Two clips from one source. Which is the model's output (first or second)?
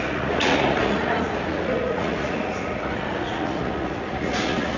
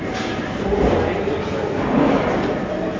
first